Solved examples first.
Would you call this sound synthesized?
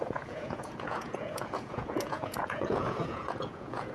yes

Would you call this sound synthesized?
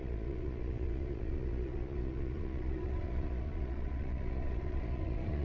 yes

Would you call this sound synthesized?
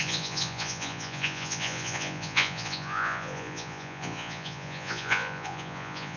yes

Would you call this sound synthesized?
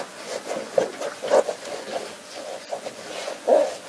yes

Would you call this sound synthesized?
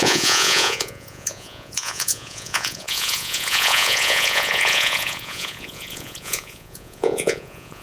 yes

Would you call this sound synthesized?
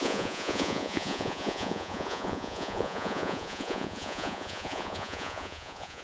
yes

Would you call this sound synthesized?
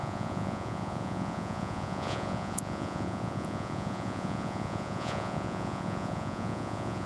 yes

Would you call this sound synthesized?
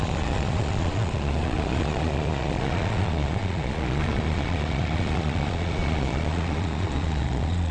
yes